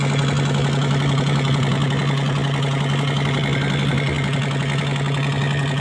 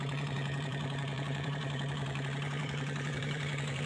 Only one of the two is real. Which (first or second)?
first